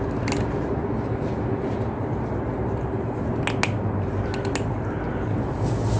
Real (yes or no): yes